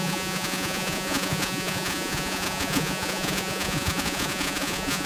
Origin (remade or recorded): remade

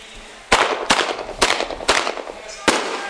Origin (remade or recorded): recorded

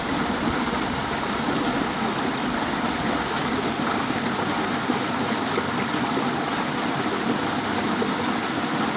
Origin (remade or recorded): recorded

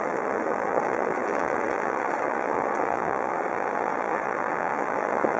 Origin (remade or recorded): remade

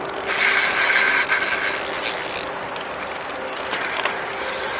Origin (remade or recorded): recorded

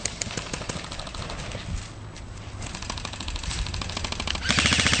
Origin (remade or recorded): recorded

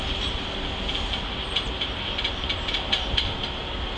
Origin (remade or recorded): recorded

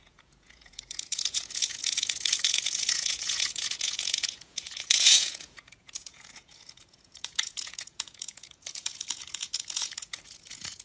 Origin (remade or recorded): remade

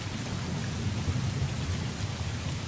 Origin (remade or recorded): recorded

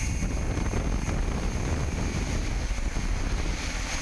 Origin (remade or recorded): recorded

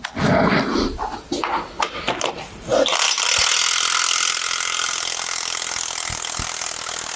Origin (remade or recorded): recorded